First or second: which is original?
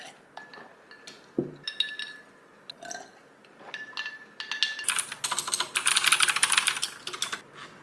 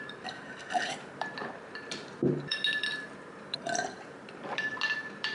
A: first